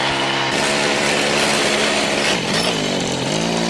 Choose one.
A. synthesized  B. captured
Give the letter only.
B